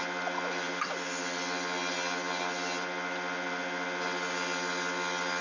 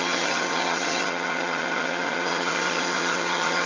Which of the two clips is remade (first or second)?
second